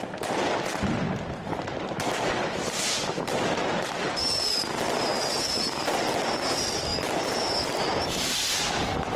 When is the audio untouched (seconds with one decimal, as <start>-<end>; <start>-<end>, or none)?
0.0-1.5; 4.7-6.9